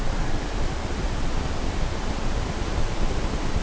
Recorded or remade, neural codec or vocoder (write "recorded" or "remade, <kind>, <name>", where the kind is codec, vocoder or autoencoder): recorded